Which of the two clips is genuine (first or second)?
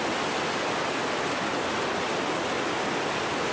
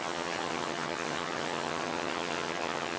first